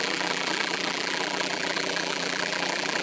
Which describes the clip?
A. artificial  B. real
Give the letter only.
A